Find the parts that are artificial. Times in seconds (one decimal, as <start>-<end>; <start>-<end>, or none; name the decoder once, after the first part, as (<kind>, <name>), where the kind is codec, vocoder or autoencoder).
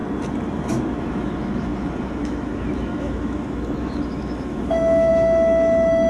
1.0-6.1 (autoencoder, DAC-VAE)